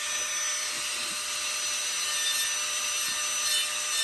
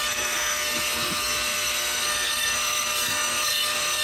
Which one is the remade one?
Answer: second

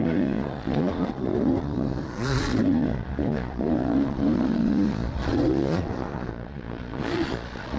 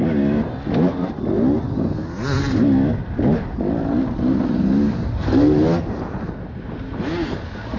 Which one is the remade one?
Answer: first